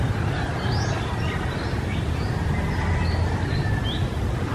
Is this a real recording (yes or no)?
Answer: yes